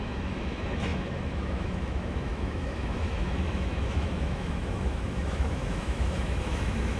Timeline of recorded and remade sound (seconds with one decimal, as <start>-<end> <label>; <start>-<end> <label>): 0.0-7.0 remade